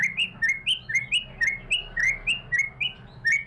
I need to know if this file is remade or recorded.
recorded